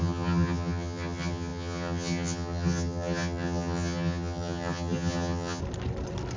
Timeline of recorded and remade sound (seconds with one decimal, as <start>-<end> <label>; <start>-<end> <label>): 0.0-5.6 remade; 5.6-6.4 recorded